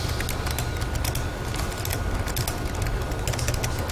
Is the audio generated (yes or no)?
no